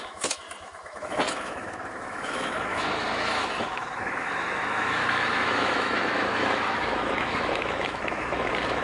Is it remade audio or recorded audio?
remade